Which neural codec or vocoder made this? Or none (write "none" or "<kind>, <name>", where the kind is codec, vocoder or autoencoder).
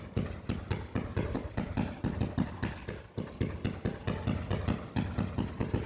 none